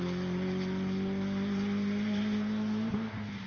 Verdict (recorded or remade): recorded